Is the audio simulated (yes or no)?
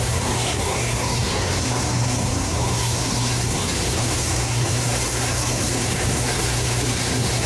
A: yes